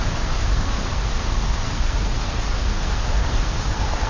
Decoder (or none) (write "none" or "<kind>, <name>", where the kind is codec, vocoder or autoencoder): codec, SNAC